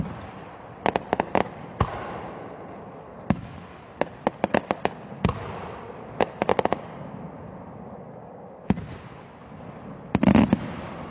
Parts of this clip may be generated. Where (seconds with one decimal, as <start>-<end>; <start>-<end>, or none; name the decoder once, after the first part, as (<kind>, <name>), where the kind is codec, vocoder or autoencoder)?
0.0-3.1 (vocoder, BigVGAN v2); 3.9-6.7; 8.6-11.1